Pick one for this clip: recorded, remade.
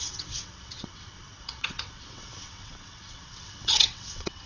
remade